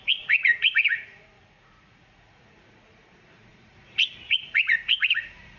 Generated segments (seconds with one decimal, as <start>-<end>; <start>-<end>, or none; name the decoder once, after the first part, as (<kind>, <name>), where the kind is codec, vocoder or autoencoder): 0.0-5.6 (vocoder, Vocos)